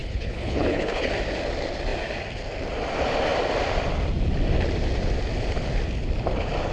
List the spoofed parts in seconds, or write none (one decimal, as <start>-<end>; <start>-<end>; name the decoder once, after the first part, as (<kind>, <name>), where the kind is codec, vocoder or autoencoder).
0.0-1.1 (codec, HILCodec)